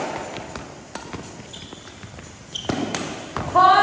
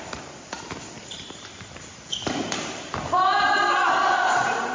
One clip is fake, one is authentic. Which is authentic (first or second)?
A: first